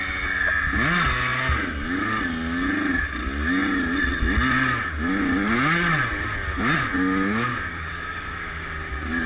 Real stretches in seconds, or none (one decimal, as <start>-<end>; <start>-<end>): 0.0-7.5; 8.7-9.3